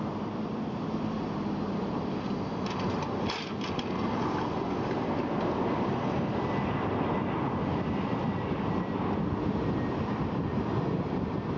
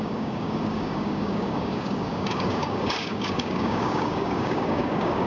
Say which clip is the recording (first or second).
first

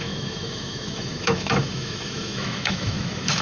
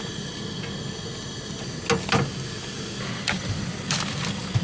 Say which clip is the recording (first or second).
second